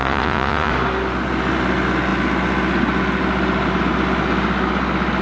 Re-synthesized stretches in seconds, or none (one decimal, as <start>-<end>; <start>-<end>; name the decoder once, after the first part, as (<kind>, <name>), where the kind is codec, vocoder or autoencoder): 0.0-0.7 (vocoder, Vocos)